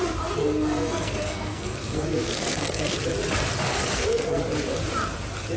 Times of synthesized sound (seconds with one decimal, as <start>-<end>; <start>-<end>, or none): 0.4-2.9; 3.7-4.4